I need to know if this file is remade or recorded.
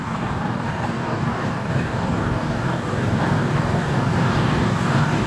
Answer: remade